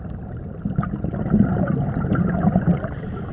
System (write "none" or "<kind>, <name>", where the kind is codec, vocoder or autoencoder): none